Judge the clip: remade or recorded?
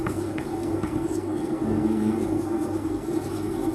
remade